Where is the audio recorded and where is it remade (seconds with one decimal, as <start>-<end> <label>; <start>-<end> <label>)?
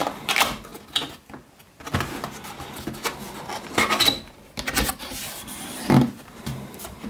0.0-0.7 remade; 0.7-4.9 recorded; 4.9-7.1 remade